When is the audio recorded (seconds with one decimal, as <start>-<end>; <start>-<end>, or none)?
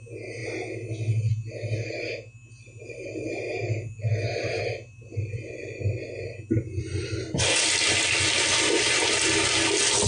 0.0-10.1